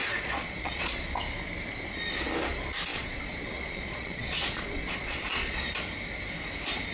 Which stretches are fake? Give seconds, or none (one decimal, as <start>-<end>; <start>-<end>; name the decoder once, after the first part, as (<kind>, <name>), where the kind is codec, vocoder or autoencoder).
0.0-1.0 (vocoder, Vocos); 2.9-5.7